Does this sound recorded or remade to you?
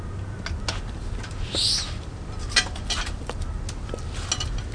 recorded